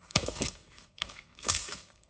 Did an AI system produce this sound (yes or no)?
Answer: yes